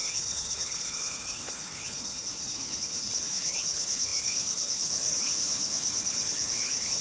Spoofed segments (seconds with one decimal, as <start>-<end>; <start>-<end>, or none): 0.0-7.0